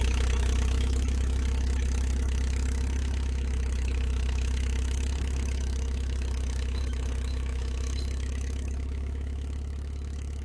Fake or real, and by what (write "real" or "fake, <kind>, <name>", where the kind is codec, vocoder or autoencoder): fake, autoencoder, DAC-VAE